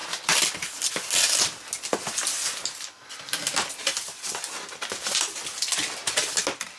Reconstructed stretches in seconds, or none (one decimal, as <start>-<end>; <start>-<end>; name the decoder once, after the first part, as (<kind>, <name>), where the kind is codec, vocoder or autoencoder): none